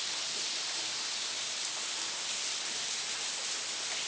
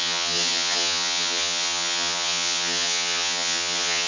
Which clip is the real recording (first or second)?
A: first